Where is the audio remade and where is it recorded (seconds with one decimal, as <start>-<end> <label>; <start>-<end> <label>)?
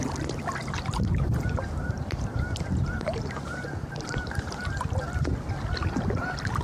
0.0-0.6 recorded; 0.6-4.6 remade; 4.6-6.6 recorded